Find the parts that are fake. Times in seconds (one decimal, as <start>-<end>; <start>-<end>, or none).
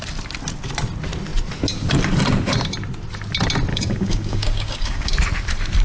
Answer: 3.7-5.1